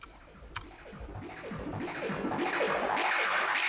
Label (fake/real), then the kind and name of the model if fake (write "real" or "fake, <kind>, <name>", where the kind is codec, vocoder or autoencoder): fake, vocoder, BigVGAN v2